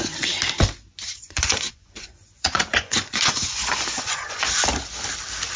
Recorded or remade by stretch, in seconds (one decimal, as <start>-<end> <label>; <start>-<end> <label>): 0.0-1.1 recorded; 1.1-4.5 remade; 4.5-5.6 recorded